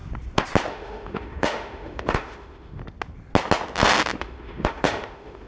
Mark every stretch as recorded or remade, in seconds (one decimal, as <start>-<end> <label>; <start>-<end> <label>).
0.0-0.7 recorded; 0.7-2.8 remade; 2.8-4.2 recorded; 4.2-5.5 remade

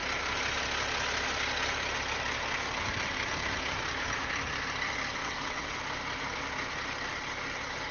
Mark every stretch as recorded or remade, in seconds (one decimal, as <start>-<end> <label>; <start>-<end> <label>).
0.0-5.2 recorded; 5.2-5.7 remade; 5.7-7.9 recorded

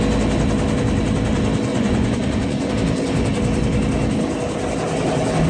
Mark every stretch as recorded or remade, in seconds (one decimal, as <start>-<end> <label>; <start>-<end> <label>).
0.0-1.7 recorded; 1.7-2.7 remade; 2.7-5.5 recorded